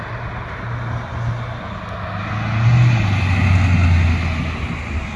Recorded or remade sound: recorded